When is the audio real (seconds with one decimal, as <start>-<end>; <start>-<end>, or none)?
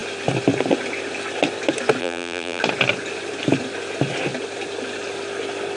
0.0-2.0; 2.6-5.8